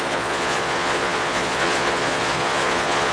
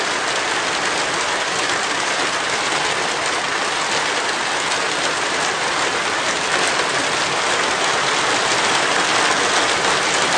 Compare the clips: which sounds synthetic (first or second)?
first